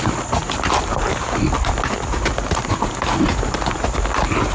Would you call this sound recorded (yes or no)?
yes